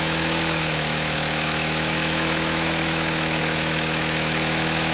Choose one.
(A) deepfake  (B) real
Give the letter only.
A